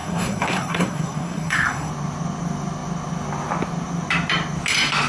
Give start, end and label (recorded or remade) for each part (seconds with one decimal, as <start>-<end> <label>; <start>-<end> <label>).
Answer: 0.0-1.9 remade; 1.9-5.1 recorded

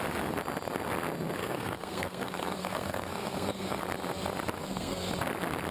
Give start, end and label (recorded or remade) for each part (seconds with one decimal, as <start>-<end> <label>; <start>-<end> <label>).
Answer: 0.0-1.4 recorded; 1.4-3.8 remade; 3.8-4.6 recorded; 4.6-5.1 remade; 5.1-5.7 recorded

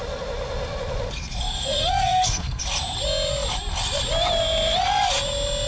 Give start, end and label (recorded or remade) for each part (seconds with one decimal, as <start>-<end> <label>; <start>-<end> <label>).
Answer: 0.0-1.4 recorded; 1.4-2.6 remade; 2.6-5.7 recorded